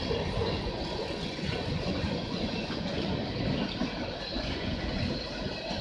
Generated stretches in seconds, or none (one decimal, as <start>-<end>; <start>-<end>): 0.4-3.2; 4.3-5.0